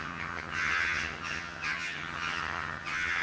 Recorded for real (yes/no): no